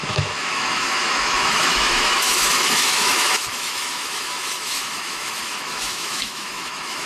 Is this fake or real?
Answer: fake